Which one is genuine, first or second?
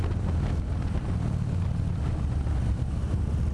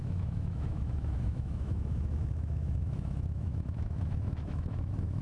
first